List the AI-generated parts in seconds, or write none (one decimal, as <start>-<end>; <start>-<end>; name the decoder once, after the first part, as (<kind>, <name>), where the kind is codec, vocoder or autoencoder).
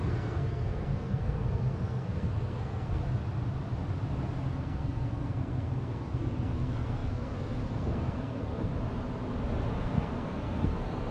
0.0-3.0 (codec, SNAC); 4.5-8.7; 9.8-11.1